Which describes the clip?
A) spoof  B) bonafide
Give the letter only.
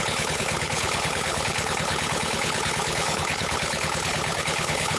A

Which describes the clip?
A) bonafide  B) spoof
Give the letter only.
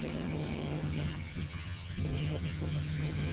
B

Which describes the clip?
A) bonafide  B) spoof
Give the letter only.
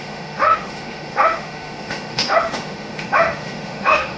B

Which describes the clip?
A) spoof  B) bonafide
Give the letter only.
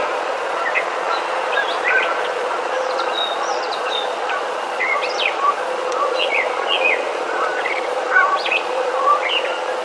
A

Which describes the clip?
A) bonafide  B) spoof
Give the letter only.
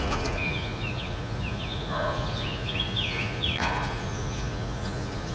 B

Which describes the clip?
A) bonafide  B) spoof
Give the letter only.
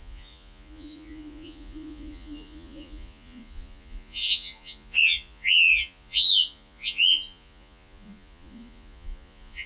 B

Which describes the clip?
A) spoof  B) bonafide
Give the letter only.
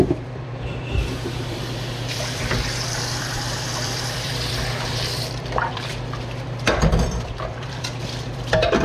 A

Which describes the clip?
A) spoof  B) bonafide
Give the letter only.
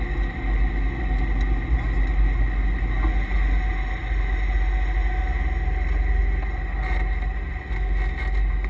B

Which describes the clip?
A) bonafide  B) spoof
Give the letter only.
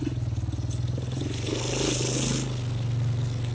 A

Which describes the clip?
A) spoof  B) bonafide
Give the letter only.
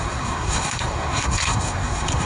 A